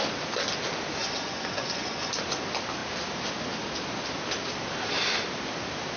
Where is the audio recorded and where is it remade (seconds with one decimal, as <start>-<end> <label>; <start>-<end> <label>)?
0.0-1.0 recorded; 1.0-2.1 remade; 2.1-6.0 recorded

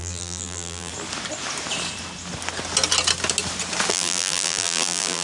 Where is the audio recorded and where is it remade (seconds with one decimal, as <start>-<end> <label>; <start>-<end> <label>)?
0.0-0.9 remade; 0.9-3.9 recorded; 3.9-5.2 remade

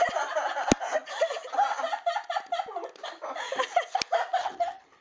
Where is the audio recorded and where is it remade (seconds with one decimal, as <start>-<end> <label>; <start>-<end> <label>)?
0.0-4.4 recorded; 4.4-5.0 remade

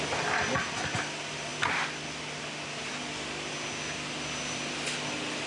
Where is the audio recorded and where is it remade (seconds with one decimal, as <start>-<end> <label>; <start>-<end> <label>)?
0.0-5.5 recorded

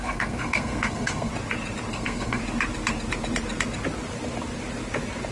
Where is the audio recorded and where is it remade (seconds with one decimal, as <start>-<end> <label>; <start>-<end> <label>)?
0.0-1.3 remade; 1.3-1.9 recorded; 1.9-2.4 remade; 2.4-5.3 recorded

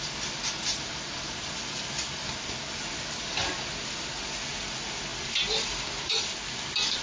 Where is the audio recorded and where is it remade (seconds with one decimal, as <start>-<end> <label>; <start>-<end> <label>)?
0.0-7.0 recorded

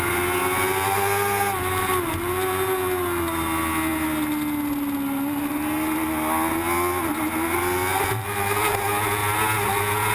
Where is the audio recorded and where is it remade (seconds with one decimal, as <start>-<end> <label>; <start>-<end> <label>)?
0.0-10.1 recorded

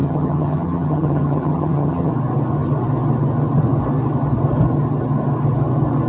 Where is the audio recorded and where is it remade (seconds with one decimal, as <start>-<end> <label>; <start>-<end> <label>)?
0.0-2.1 remade; 2.1-6.1 recorded